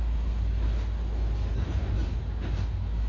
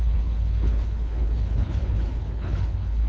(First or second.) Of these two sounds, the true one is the first